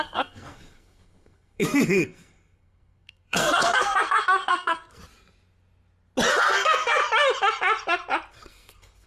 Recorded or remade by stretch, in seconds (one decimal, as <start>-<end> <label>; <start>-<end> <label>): 0.0-5.0 remade; 5.0-6.3 recorded; 6.3-7.0 remade; 7.0-8.3 recorded; 8.3-9.1 remade

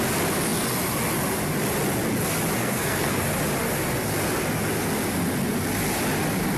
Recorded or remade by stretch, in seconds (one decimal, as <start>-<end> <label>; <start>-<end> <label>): 0.0-2.6 recorded; 2.6-3.2 remade; 3.2-6.6 recorded

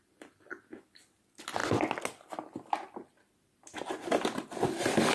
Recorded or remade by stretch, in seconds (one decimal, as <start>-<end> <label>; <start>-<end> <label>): 0.0-5.1 recorded

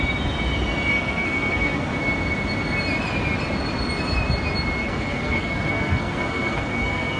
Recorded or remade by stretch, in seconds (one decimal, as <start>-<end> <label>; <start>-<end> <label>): 0.0-0.9 recorded; 0.9-1.9 remade; 1.9-4.8 recorded; 4.8-7.2 remade

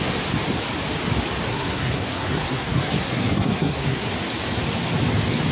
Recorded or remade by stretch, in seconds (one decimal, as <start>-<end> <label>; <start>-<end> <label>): 0.0-1.5 recorded; 1.5-4.1 remade; 4.1-5.5 recorded

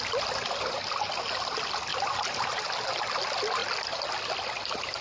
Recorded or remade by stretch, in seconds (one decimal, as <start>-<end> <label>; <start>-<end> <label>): 0.0-5.0 recorded

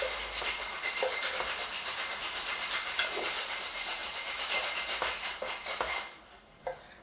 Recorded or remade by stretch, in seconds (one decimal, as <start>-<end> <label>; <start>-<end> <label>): 0.0-7.0 recorded